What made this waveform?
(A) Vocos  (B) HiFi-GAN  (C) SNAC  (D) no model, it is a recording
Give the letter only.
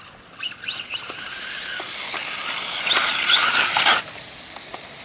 D